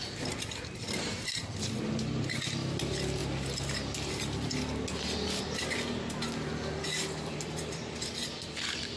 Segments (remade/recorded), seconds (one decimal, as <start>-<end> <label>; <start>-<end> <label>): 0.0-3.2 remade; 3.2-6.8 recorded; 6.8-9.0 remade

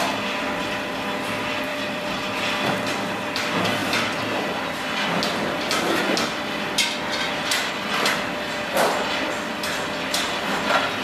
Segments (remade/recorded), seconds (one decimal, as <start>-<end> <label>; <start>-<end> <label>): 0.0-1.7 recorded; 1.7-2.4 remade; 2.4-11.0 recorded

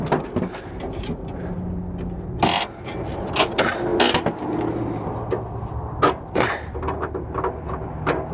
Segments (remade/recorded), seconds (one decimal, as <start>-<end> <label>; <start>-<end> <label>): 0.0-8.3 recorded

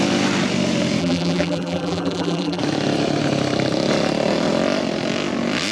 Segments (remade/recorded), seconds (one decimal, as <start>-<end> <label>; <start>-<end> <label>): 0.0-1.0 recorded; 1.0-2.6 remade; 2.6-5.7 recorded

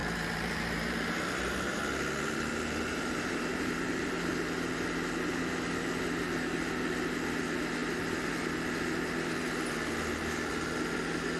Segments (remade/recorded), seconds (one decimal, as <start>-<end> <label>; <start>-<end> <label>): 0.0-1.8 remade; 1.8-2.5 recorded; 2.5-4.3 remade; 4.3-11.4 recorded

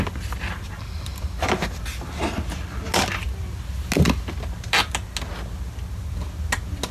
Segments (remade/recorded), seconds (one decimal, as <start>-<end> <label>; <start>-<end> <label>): 0.0-6.9 recorded